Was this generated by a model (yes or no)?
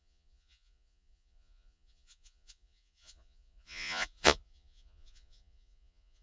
yes